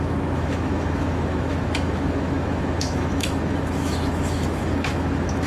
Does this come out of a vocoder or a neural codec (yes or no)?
yes